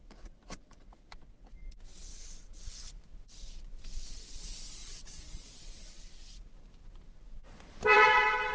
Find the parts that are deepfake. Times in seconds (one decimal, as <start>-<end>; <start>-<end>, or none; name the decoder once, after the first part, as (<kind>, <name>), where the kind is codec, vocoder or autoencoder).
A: 0.0-1.2 (vocoder, BigVGAN v2); 2.1-8.5